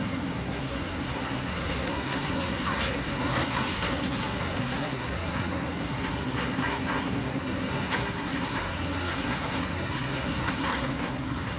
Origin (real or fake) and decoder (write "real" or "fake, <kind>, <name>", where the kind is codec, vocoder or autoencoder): fake, codec, SNAC